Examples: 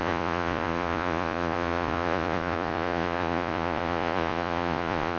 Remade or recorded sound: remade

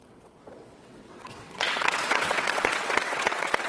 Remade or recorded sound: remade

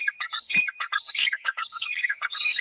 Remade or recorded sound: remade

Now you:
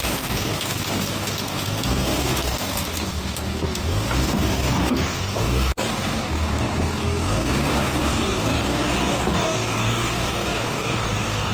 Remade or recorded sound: remade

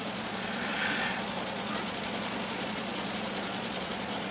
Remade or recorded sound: remade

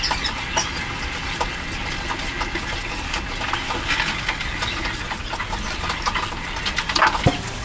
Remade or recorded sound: recorded